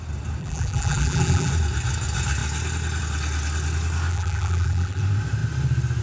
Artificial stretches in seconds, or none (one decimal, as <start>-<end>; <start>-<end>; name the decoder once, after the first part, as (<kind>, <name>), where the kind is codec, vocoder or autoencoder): 0.4-1.5 (vocoder, BigVGAN v2); 4.1-5.0